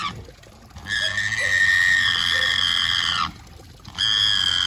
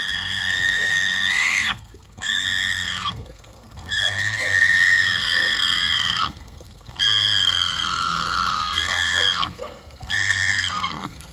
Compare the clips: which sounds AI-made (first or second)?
second